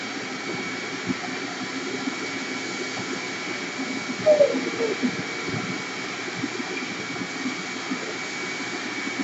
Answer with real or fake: real